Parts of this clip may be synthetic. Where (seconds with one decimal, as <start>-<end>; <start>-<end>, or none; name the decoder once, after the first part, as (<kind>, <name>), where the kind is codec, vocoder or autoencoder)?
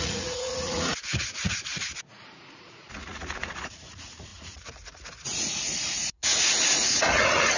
0.0-7.6 (vocoder, Vocos)